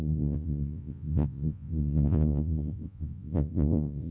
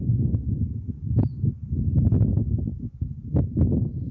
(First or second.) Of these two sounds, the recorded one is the second